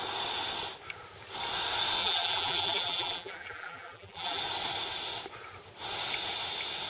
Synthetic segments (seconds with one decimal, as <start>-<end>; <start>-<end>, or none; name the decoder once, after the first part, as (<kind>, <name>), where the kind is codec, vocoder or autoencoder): 2.0-4.4 (vocoder, BigVGAN v2)